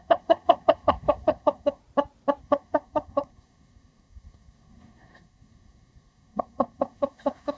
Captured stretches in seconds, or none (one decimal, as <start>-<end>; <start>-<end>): 1.8-2.4